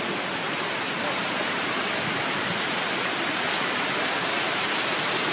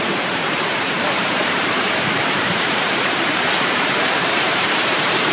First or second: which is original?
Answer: first